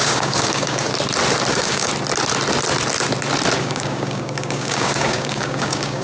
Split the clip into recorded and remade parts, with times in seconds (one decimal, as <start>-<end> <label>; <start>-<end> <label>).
0.0-0.9 remade; 0.9-1.5 recorded; 1.5-1.9 remade; 1.9-3.6 recorded; 3.6-6.0 remade

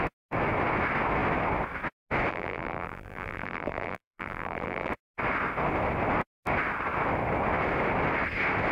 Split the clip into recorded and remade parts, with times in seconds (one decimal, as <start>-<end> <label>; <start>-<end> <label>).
0.0-2.3 recorded; 2.3-4.9 remade; 4.9-8.7 recorded

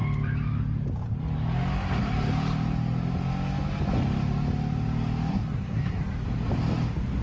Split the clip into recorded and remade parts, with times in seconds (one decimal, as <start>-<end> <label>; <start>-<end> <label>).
0.0-5.3 recorded; 5.3-6.0 remade; 6.0-7.2 recorded

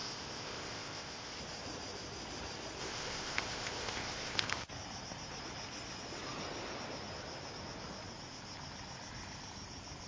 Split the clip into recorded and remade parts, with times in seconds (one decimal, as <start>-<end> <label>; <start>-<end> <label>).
0.0-1.4 remade; 1.4-2.8 recorded; 2.8-4.7 remade; 4.7-10.1 recorded

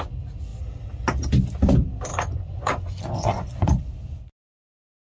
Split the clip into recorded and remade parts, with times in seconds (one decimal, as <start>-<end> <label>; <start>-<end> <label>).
0.0-2.1 recorded; 2.1-3.8 remade; 3.8-5.1 recorded

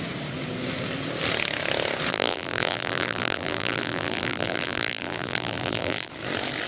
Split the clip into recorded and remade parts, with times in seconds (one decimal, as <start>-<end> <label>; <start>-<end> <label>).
0.0-2.1 recorded; 2.1-6.1 remade; 6.1-6.7 recorded